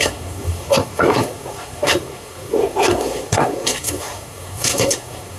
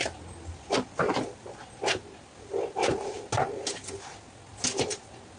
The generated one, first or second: first